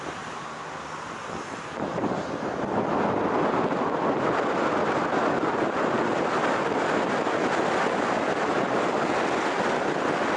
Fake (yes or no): no